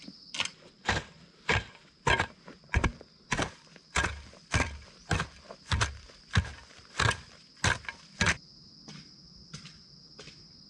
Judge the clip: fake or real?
real